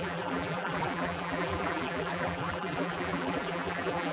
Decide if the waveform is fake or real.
fake